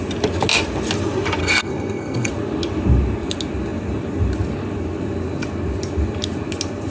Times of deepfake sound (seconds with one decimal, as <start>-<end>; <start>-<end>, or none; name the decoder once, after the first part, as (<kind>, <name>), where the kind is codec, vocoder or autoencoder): 1.4-2.3 (codec, SNAC)